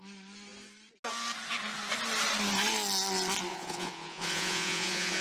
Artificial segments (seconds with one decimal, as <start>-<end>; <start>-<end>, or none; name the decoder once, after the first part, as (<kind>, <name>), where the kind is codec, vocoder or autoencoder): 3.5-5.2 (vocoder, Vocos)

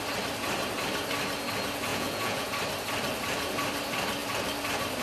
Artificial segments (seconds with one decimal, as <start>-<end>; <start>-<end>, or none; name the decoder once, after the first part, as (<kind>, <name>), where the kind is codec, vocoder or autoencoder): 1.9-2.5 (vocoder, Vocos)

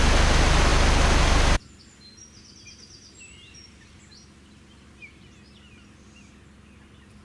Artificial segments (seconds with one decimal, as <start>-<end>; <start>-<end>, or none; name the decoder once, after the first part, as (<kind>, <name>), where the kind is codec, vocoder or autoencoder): none

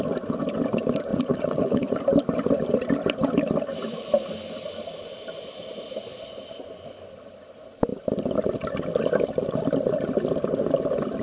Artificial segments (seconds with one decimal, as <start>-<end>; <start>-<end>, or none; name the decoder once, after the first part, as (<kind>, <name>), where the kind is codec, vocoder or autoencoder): 1.1-2.0 (vocoder, Vocos)

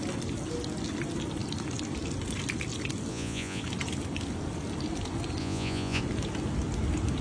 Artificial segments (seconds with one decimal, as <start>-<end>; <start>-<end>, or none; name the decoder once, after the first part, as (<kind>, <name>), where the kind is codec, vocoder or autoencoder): 3.1-3.6 (vocoder, Vocos); 5.4-6.0